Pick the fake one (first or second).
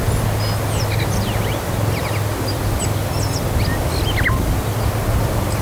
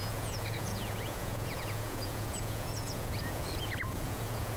second